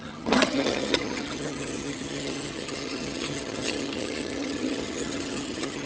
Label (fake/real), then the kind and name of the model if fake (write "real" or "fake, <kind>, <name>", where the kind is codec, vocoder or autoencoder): fake, vocoder, HiFi-GAN